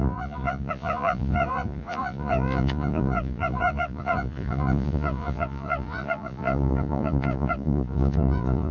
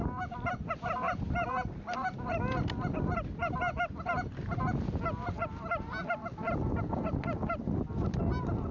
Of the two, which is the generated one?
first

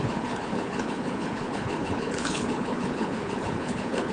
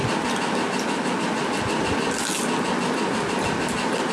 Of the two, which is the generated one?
first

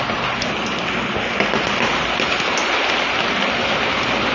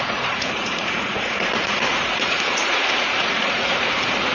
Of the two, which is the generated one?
second